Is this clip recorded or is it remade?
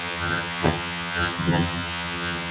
remade